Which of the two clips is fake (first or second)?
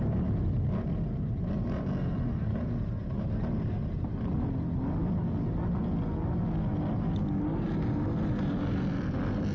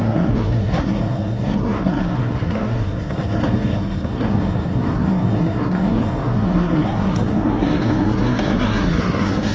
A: second